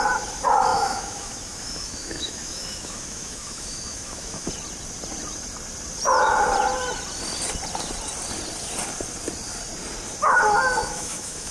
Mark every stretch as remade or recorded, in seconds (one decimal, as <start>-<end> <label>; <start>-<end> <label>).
0.0-0.7 recorded; 0.7-4.5 remade; 4.5-10.8 recorded; 10.8-11.5 remade